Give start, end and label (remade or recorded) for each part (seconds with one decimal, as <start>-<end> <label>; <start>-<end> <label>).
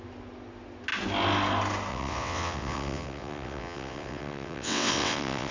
0.0-1.9 recorded; 1.9-5.5 remade